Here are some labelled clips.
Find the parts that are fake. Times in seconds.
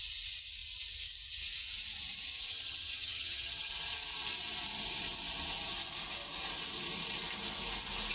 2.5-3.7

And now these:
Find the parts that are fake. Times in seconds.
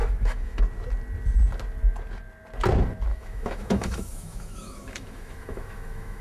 0.0-0.6; 3.1-6.2